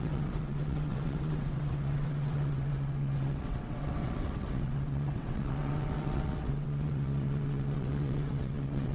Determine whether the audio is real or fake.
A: fake